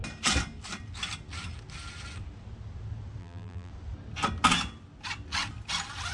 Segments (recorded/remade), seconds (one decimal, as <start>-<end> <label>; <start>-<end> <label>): 0.0-3.2 recorded; 3.2-3.7 remade; 3.7-6.1 recorded